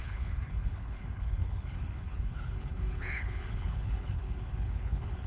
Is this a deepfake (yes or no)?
yes